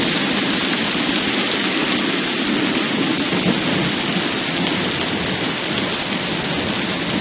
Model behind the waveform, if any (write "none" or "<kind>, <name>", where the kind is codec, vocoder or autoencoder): none